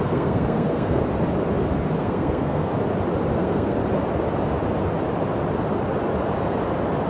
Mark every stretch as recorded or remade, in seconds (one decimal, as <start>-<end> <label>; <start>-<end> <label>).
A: 0.0-1.0 remade; 1.0-2.0 recorded; 2.0-2.7 remade; 2.7-3.3 recorded; 3.3-3.8 remade; 3.8-7.1 recorded

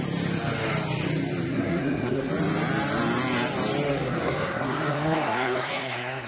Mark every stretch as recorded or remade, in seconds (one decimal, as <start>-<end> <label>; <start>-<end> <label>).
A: 0.0-1.5 recorded; 1.5-2.3 remade; 2.3-3.9 recorded; 3.9-6.3 remade

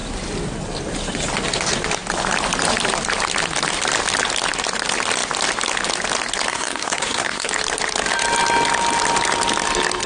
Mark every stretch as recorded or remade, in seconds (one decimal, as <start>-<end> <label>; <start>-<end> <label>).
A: 0.0-6.5 recorded; 6.5-7.5 remade; 7.5-10.1 recorded

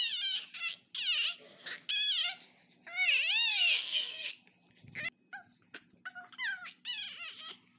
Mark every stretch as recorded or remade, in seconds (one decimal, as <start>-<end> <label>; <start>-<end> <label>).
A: 0.0-3.5 recorded; 3.5-4.3 remade; 4.3-7.8 recorded

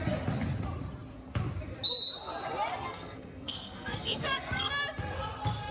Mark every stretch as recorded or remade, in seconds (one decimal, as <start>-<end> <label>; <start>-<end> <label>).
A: 0.0-2.7 recorded; 2.7-4.7 remade; 4.7-5.7 recorded

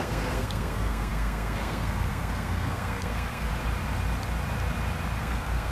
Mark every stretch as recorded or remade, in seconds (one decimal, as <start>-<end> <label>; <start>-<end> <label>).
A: 0.0-3.5 remade; 3.5-5.2 recorded; 5.2-5.7 remade

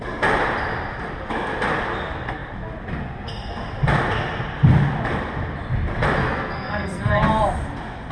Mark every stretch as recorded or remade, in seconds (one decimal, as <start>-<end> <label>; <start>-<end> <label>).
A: 0.0-6.2 recorded; 6.2-7.0 remade; 7.0-8.1 recorded

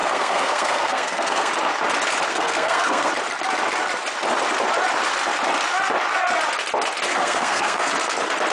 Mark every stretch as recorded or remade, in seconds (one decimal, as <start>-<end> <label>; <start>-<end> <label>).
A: 0.0-1.5 remade; 1.5-2.3 recorded; 2.3-3.1 remade; 3.1-7.1 recorded; 7.1-7.9 remade; 7.9-8.5 recorded